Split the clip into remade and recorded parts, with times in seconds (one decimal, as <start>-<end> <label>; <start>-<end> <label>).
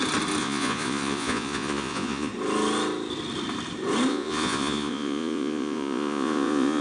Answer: 0.0-0.4 recorded; 0.4-2.3 remade; 2.3-4.1 recorded; 4.1-6.8 remade